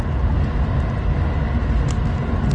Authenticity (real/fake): real